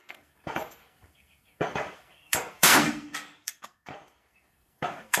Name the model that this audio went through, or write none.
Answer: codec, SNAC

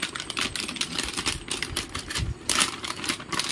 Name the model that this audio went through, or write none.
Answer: none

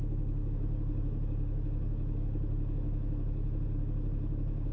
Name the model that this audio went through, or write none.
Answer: autoencoder, DAC-VAE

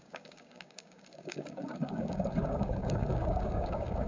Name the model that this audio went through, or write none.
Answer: codec, DAC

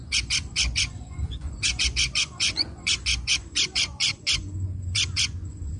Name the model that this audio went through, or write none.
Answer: vocoder, Vocos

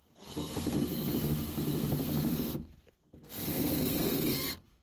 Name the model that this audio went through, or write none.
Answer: codec, SNAC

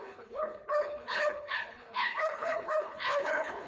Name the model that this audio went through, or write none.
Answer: codec, HILCodec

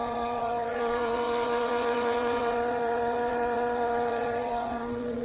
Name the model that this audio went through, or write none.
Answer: vocoder, WaveNeXt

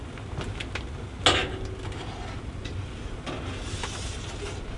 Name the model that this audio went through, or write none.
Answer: none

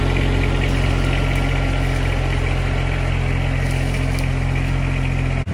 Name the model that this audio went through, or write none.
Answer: none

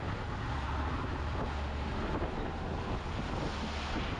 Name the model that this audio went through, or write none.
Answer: none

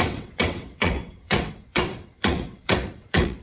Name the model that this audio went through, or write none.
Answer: vocoder, WaveNeXt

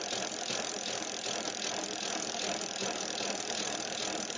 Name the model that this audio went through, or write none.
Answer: none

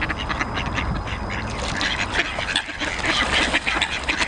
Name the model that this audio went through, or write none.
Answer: none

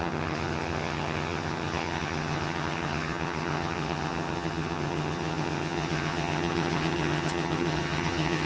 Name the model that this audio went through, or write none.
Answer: vocoder, HiFi-GAN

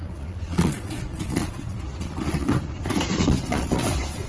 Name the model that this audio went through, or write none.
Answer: vocoder, Vocos